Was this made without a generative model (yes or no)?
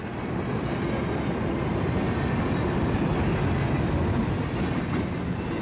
yes